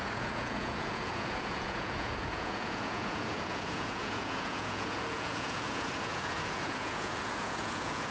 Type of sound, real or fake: fake